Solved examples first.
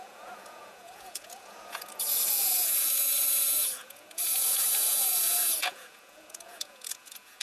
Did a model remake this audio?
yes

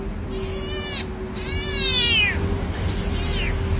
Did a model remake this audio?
no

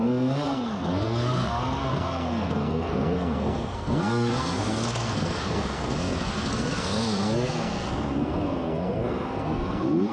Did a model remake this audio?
yes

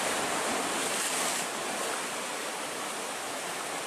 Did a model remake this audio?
no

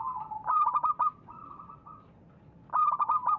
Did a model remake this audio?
no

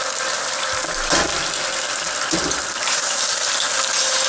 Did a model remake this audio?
no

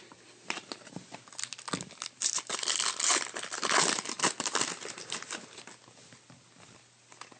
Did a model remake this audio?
no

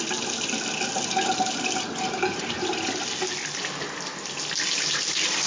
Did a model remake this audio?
no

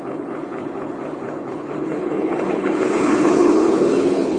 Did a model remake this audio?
yes